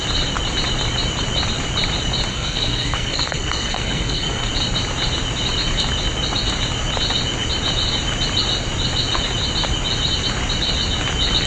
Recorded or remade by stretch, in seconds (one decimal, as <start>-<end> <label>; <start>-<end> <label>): 0.0-2.3 recorded; 2.3-4.5 remade; 4.5-11.5 recorded